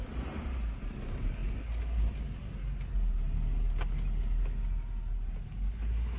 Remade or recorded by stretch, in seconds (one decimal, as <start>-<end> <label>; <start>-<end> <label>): 0.0-6.2 recorded

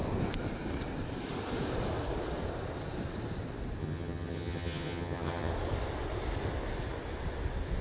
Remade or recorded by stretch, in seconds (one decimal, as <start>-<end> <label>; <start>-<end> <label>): 0.0-3.8 recorded; 3.8-5.5 remade; 5.5-7.8 recorded

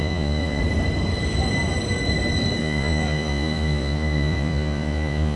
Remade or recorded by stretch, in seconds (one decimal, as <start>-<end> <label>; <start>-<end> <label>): 0.0-0.6 remade; 0.6-2.6 recorded; 2.6-5.4 remade